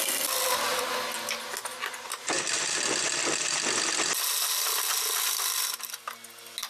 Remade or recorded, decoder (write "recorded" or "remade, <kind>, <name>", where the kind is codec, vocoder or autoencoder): recorded